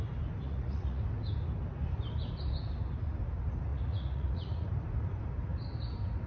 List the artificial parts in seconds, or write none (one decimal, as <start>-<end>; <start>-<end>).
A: 0.4-1.0; 3.7-4.7